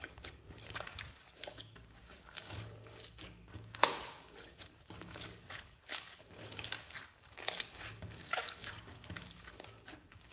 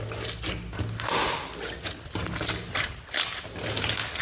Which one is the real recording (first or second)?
second